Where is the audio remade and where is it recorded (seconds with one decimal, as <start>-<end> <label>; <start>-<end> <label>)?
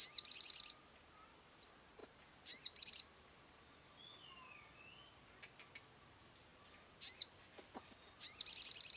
0.0-2.0 recorded; 2.0-2.9 remade; 2.9-9.0 recorded